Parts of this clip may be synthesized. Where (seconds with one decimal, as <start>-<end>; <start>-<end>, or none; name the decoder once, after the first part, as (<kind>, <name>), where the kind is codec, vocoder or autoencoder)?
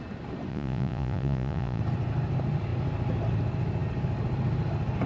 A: 0.5-1.8 (vocoder, Vocos)